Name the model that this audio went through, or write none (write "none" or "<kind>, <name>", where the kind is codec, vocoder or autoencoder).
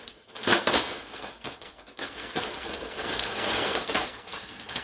codec, SNAC